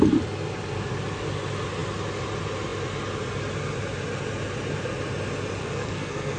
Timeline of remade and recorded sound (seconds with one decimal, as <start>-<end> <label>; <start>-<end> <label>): 0.0-5.6 recorded; 5.6-6.4 remade

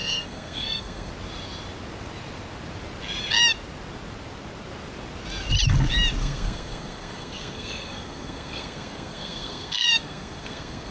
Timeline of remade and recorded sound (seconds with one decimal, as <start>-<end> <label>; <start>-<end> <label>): 0.0-1.1 remade; 1.1-6.2 recorded; 6.2-10.9 remade

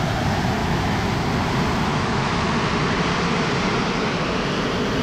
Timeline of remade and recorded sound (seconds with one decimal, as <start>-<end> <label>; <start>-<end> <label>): 0.0-0.6 recorded; 0.6-1.1 remade; 1.1-1.9 recorded; 1.9-2.5 remade; 2.5-5.0 recorded

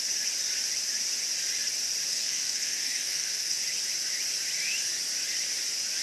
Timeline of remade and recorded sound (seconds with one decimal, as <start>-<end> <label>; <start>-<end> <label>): 0.0-2.1 recorded; 2.1-3.6 remade; 3.6-6.0 recorded

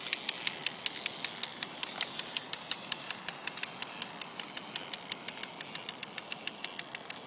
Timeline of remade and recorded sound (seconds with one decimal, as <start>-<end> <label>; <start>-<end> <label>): 0.0-1.5 recorded; 1.5-3.5 remade; 3.5-7.3 recorded